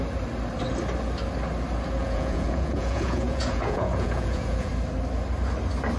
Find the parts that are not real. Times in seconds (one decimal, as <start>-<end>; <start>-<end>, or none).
2.0-4.7